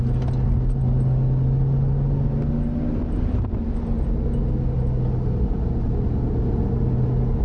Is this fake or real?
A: real